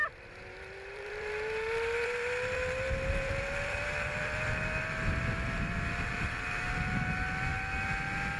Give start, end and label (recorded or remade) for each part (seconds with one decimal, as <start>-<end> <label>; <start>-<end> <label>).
0.0-7.5 remade; 7.5-8.4 recorded